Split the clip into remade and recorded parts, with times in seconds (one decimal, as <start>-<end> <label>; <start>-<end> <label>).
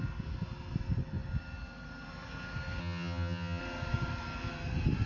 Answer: 0.0-2.8 recorded; 2.8-3.6 remade; 3.6-5.1 recorded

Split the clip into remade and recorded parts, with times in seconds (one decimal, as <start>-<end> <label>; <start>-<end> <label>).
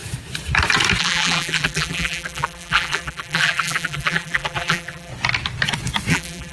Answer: 0.0-1.0 recorded; 1.0-5.1 remade; 5.1-6.1 recorded; 6.1-6.5 remade